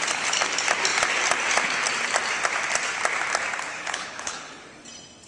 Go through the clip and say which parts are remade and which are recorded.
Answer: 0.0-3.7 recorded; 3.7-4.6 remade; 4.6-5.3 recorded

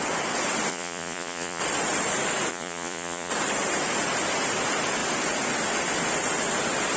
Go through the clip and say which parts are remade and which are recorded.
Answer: 0.0-0.7 recorded; 0.7-1.6 remade; 1.6-2.5 recorded; 2.5-3.3 remade; 3.3-7.0 recorded

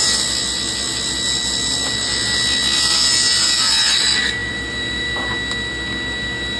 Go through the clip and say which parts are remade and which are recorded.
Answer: 0.0-4.4 recorded; 4.4-5.1 remade; 5.1-6.6 recorded

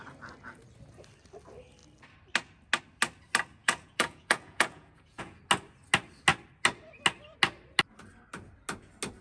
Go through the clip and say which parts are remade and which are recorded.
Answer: 0.0-3.6 recorded; 3.6-5.4 remade; 5.4-9.2 recorded

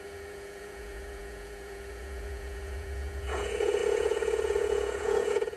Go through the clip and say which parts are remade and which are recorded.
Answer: 0.0-5.6 remade

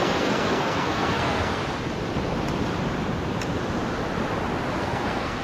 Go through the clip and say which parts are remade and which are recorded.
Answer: 0.0-1.6 remade; 1.6-4.8 recorded; 4.8-5.4 remade

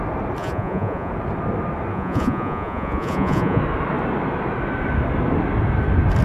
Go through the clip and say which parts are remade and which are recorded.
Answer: 0.0-0.4 recorded; 0.4-1.1 remade; 1.1-1.9 recorded; 1.9-3.6 remade; 3.6-6.2 recorded